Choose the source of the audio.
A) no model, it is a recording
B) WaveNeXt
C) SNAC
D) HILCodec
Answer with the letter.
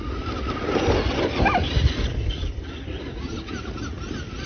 A